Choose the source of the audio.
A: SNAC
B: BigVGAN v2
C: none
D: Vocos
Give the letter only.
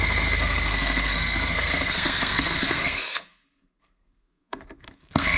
A